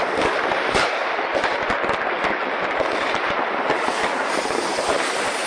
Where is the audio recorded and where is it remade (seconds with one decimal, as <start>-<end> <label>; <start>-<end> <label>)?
0.0-1.0 remade; 1.0-4.3 recorded; 4.3-5.5 remade